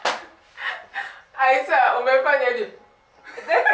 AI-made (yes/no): no